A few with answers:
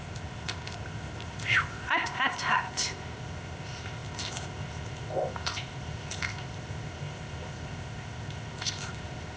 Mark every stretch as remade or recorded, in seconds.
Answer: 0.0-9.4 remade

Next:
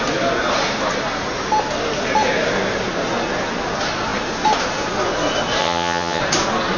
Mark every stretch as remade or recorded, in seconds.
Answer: 0.0-5.6 recorded; 5.6-6.2 remade; 6.2-6.8 recorded

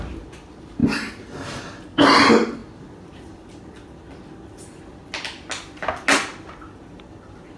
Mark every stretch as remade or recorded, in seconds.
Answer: 0.0-7.6 recorded

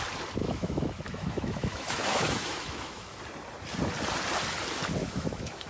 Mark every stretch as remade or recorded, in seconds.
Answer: 0.0-0.4 recorded; 0.4-3.2 remade; 3.2-5.0 recorded; 5.0-5.7 remade

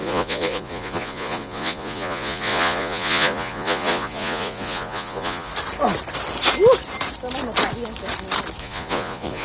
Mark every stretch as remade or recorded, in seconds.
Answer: 0.0-5.5 remade; 5.5-8.6 recorded; 8.6-9.4 remade

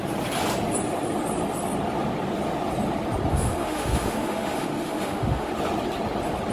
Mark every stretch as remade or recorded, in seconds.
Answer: 0.0-3.3 recorded; 3.3-5.5 remade; 5.5-6.5 recorded

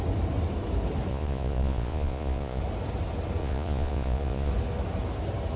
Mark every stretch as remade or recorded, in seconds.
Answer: 0.0-1.1 recorded; 1.1-2.6 remade; 2.6-3.4 recorded; 3.4-4.5 remade; 4.5-5.6 recorded

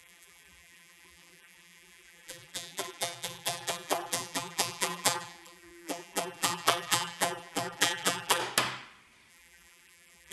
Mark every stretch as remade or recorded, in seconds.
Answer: 0.0-8.4 remade; 8.4-9.3 recorded; 9.3-10.3 remade